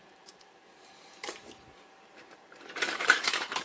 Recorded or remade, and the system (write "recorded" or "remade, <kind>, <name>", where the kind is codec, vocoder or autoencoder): remade, vocoder, BigVGAN v2